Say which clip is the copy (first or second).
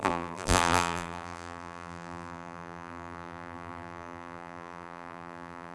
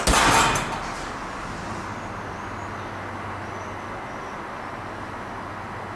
first